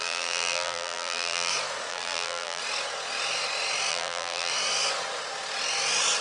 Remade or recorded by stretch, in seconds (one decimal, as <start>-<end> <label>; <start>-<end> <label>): 0.0-1.5 remade; 1.5-1.9 recorded; 1.9-2.6 remade; 2.6-3.9 recorded; 3.9-4.5 remade; 4.5-6.2 recorded